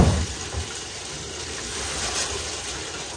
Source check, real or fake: real